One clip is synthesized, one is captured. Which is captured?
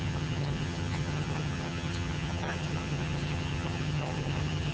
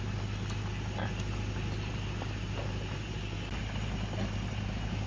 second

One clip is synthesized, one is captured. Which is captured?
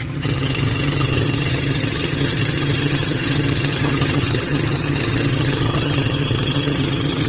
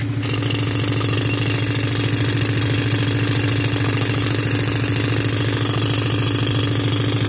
second